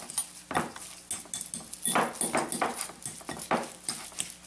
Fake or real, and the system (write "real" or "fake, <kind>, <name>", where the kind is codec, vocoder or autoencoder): real